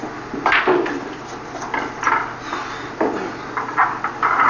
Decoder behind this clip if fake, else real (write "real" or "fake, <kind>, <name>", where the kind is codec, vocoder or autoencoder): real